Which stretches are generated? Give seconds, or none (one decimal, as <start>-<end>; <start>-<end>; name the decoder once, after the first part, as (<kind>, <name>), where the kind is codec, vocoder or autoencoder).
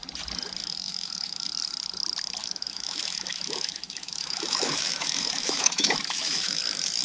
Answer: 0.6-1.5 (autoencoder, DAC-VAE); 2.4-6.6